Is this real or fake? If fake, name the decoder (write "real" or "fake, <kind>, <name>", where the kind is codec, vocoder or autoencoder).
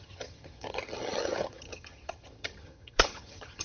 fake, vocoder, HiFi-GAN